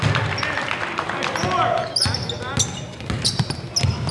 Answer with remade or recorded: recorded